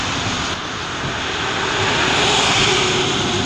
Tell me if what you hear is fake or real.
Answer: real